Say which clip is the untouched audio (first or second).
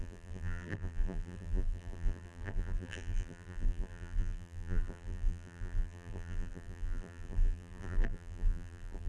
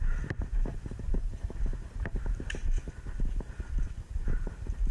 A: second